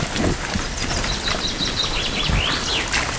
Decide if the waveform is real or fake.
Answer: real